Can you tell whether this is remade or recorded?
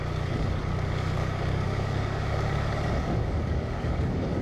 remade